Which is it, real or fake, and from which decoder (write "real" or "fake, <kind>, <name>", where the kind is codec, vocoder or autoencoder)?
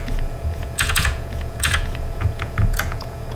fake, vocoder, Vocos